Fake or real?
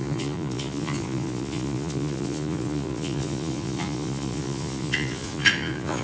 fake